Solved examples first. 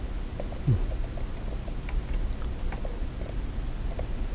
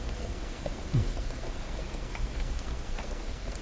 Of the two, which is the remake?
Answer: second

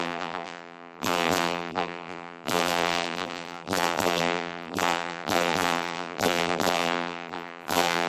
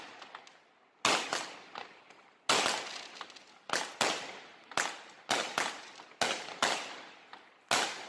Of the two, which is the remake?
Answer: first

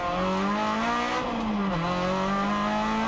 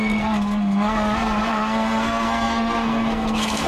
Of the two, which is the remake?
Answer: second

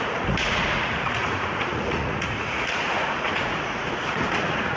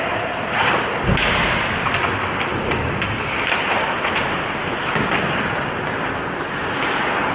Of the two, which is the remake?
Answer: first